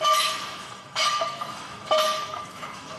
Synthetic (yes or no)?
yes